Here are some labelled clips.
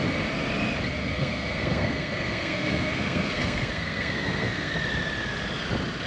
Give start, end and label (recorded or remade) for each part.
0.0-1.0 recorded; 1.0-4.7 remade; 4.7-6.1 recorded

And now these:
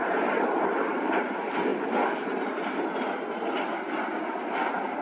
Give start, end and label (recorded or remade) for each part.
0.0-1.7 remade; 1.7-5.0 recorded

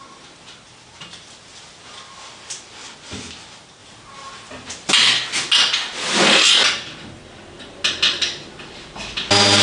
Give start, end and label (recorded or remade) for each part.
0.0-9.6 recorded